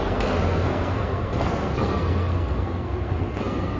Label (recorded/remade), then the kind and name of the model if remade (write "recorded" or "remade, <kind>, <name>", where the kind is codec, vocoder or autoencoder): remade, codec, SNAC